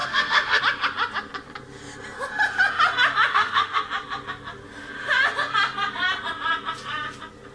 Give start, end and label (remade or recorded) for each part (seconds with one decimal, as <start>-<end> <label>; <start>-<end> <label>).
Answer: 0.0-0.6 remade; 0.6-3.3 recorded; 3.3-3.8 remade; 3.8-7.5 recorded